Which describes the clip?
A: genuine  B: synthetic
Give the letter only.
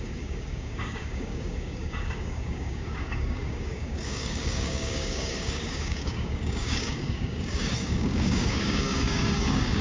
B